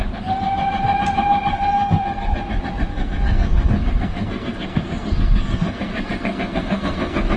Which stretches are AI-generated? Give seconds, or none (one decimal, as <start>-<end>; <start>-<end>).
1.5-2.4; 2.9-7.4